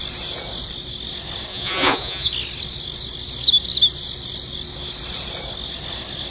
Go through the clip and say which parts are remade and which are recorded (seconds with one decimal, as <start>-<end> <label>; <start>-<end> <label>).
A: 0.0-1.5 recorded; 1.5-2.3 remade; 2.3-6.3 recorded